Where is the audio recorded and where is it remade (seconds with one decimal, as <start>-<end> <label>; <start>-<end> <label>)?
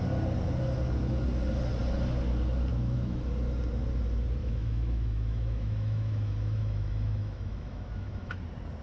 0.0-2.7 recorded; 2.7-3.2 remade; 3.2-4.4 recorded; 4.4-8.4 remade; 8.4-8.8 recorded